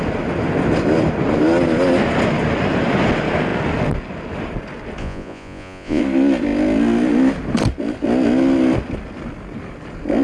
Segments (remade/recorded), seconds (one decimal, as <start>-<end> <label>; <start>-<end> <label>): 0.0-5.0 recorded; 5.0-6.0 remade; 6.0-10.2 recorded